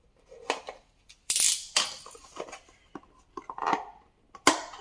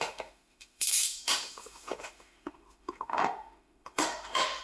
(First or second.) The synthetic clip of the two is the second